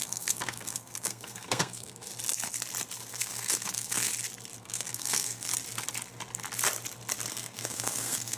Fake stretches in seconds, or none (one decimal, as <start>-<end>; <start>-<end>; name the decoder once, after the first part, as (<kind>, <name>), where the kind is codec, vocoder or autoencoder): 0.0-2.1 (codec, SNAC); 3.1-4.1; 4.6-5.5; 7.3-8.4